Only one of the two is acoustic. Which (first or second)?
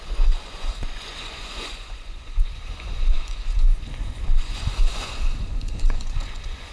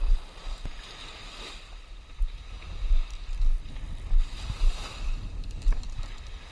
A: second